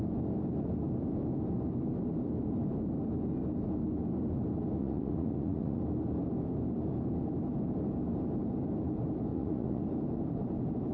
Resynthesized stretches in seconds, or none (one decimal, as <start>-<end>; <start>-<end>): 4.8-5.8; 9.3-9.8